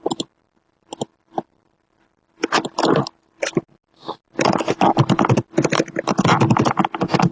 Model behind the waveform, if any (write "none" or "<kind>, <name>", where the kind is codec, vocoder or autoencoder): none